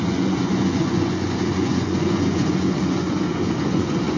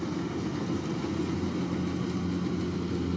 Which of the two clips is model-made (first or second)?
first